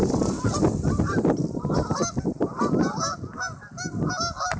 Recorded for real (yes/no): yes